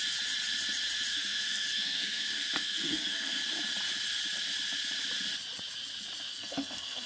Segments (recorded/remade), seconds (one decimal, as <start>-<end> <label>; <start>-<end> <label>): 0.0-1.1 recorded; 1.1-3.4 remade; 3.4-6.3 recorded; 6.3-7.1 remade